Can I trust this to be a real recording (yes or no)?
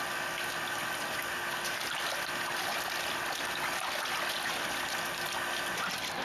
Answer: yes